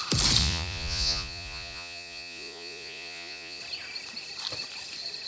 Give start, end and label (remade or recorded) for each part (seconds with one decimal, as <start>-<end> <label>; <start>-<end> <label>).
0.0-0.4 recorded; 0.4-3.6 remade; 3.6-5.3 recorded